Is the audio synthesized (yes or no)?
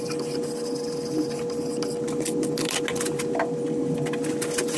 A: no